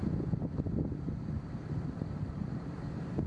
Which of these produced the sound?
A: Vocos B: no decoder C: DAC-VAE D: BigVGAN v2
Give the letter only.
D